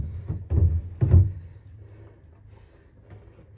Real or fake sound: real